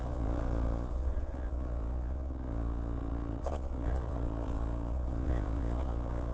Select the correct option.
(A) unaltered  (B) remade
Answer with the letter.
B